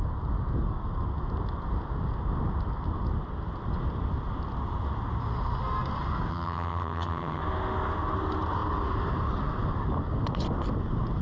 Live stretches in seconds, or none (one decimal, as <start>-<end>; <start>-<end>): 0.0-6.3; 7.4-11.2